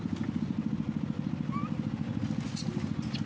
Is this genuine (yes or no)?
yes